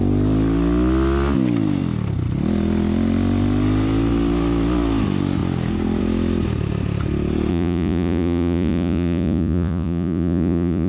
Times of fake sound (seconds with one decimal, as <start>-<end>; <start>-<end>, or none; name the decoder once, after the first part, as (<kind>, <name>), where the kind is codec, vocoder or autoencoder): 7.5-10.9 (vocoder, Vocos)